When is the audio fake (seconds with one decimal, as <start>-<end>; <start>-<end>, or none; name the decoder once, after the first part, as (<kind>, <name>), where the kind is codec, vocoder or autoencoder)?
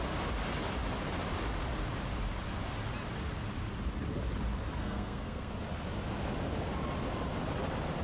4.8-5.5 (codec, SNAC)